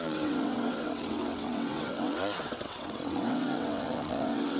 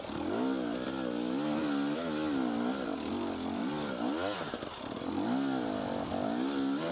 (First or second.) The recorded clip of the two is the second